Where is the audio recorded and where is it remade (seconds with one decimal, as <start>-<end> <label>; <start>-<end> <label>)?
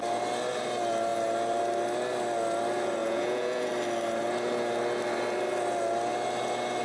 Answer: 0.0-3.0 recorded; 3.0-3.7 remade; 3.7-6.8 recorded